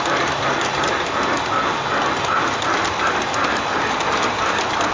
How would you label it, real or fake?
real